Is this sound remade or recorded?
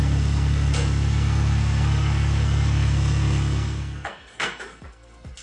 remade